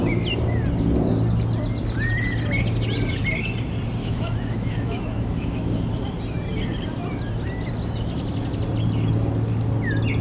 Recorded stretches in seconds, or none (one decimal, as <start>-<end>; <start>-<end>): 0.0-4.0; 5.7-10.2